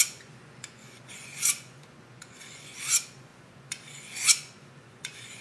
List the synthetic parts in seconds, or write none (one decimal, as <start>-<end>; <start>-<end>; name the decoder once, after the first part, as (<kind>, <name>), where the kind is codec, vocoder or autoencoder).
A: 0.0-5.4 (vocoder, Vocos)